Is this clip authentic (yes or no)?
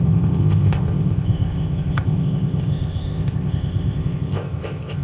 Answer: no